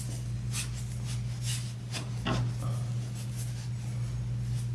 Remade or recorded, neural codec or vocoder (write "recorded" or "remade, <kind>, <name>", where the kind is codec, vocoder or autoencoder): recorded